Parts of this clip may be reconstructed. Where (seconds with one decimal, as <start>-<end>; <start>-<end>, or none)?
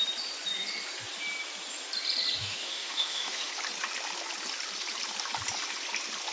2.4-3.5